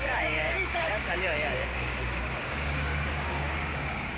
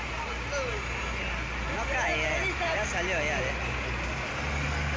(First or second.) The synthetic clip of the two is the first